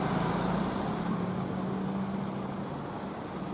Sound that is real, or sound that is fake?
real